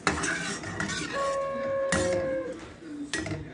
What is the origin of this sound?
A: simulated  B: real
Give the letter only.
B